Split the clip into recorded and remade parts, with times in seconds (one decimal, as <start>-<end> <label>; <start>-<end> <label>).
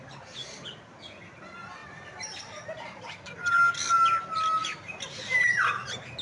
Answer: 0.0-1.8 recorded; 1.8-3.2 remade; 3.2-4.6 recorded; 4.6-6.2 remade